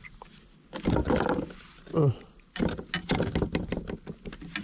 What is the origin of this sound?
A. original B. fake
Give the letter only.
A